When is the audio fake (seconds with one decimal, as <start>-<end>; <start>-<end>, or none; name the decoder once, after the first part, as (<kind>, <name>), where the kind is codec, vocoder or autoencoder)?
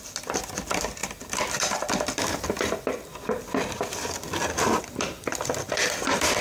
0.0-6.4 (vocoder, BigVGAN v2)